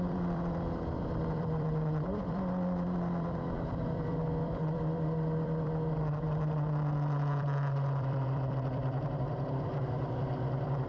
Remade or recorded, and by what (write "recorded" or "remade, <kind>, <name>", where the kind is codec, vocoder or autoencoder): remade, vocoder, BigVGAN v2